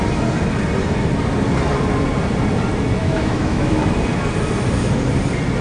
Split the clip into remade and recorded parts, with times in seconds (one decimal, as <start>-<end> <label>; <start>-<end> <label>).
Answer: 0.0-3.0 recorded; 3.0-3.8 remade; 3.8-5.6 recorded